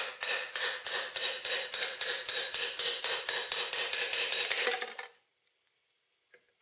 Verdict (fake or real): real